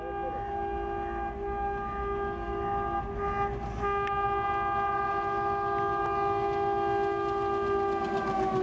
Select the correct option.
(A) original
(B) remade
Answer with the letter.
A